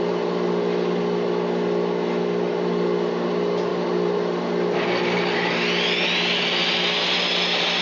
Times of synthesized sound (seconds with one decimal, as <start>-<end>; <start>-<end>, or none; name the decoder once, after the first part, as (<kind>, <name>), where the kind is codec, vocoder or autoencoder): none